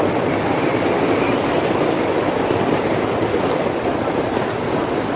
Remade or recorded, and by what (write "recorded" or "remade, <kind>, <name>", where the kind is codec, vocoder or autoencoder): recorded